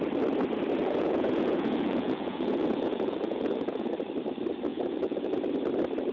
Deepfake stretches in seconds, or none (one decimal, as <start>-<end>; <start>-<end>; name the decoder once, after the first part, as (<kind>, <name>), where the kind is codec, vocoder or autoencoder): 0.8-3.9 (vocoder, Vocos); 4.7-5.4